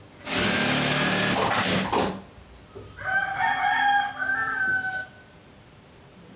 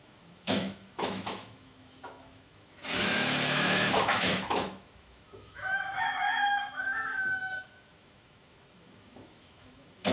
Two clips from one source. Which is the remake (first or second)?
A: second